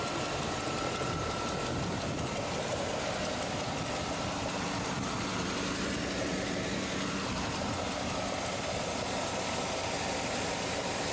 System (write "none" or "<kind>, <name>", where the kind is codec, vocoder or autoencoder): none